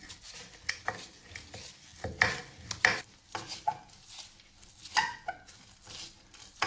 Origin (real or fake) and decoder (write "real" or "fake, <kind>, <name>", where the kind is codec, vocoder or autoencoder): real